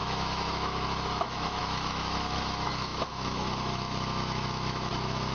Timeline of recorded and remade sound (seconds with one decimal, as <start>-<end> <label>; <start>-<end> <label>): 0.0-5.3 remade